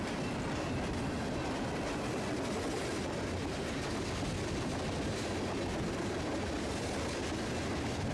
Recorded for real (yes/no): yes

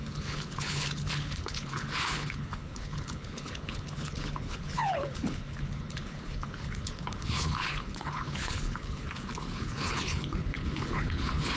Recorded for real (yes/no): no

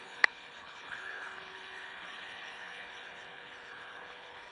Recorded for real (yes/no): no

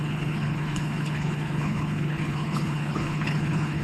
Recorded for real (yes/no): no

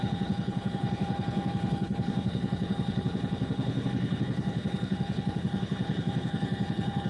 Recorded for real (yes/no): no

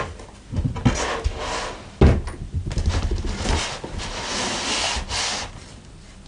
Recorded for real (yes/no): yes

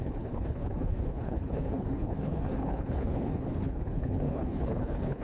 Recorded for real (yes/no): no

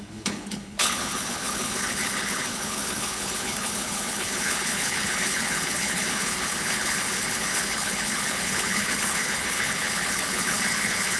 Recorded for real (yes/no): no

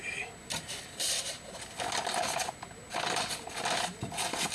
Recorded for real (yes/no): yes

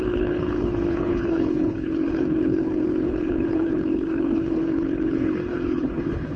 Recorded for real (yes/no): no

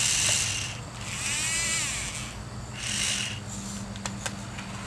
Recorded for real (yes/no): yes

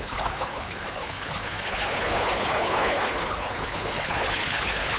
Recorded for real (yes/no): no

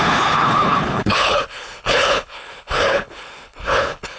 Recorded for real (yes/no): no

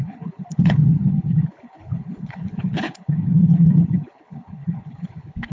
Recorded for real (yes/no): no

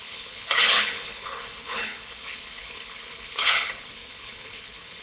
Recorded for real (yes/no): no